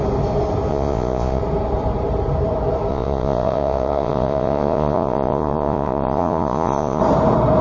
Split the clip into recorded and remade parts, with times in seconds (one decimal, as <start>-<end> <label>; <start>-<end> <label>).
0.0-0.7 recorded; 0.7-1.4 remade; 1.4-2.9 recorded; 2.9-7.0 remade; 7.0-7.6 recorded